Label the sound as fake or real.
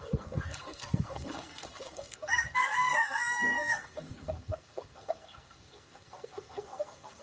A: fake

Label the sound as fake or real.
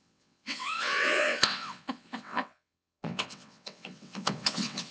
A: fake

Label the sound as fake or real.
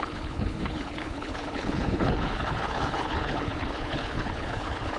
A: fake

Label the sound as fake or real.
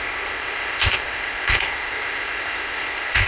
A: fake